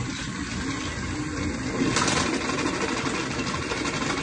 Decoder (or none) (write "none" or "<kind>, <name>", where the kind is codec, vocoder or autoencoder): none